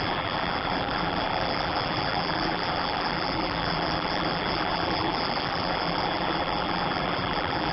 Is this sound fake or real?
fake